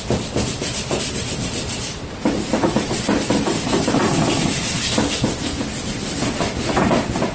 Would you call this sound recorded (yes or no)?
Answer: no